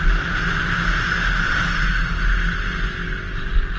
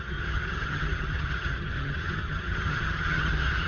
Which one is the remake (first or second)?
second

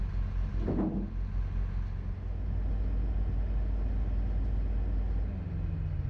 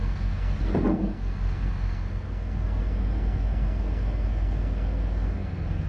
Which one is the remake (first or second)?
second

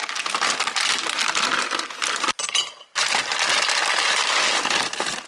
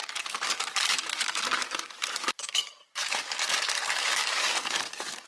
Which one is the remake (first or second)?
second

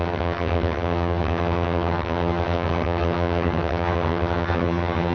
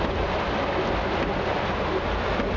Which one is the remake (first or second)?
first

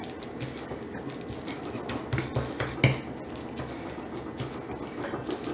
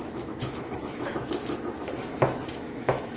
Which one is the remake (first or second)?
second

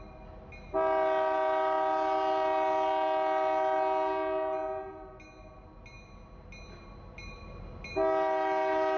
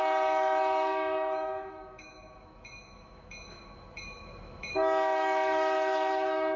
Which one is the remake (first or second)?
second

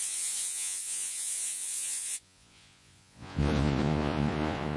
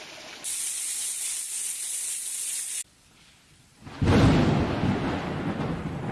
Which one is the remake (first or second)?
first